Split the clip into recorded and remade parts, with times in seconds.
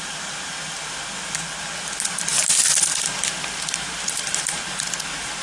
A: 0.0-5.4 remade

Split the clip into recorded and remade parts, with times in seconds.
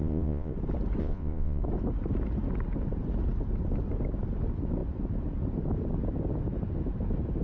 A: 0.0-0.5 remade; 0.5-1.0 recorded; 1.0-1.6 remade; 1.6-7.4 recorded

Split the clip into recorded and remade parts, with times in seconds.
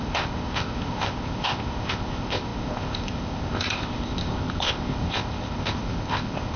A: 0.0-6.6 remade